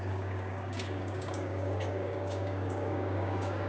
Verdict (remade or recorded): remade